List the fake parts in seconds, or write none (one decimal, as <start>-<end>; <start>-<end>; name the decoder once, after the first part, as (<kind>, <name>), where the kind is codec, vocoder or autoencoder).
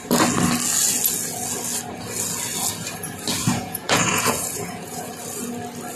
3.4-5.1 (vocoder, Vocos)